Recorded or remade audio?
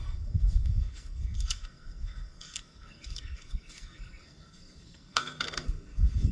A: remade